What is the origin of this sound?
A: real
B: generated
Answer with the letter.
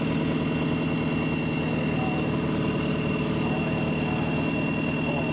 A